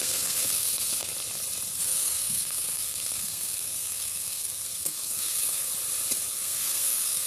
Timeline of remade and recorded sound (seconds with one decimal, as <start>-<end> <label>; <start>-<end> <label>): 0.0-1.1 remade; 1.1-1.7 recorded; 1.7-5.7 remade; 5.7-6.3 recorded; 6.3-7.3 remade